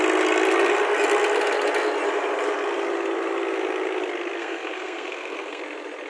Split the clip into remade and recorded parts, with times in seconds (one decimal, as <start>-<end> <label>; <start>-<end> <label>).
0.0-4.4 recorded; 4.4-5.6 remade; 5.6-6.1 recorded